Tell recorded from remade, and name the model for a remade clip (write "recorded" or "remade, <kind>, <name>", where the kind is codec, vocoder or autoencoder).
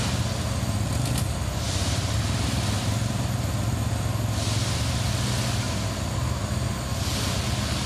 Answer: recorded